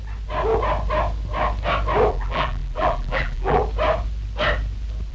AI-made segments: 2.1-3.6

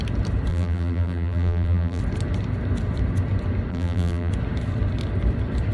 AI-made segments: 0.5-2.0; 3.7-4.3